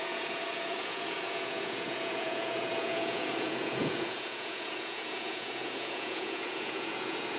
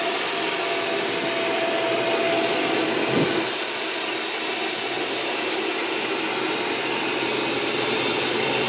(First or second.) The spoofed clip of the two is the first